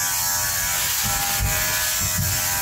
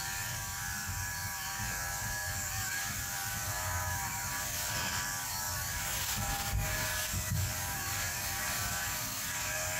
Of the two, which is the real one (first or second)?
first